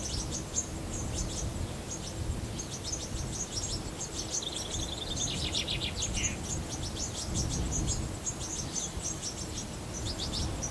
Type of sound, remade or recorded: recorded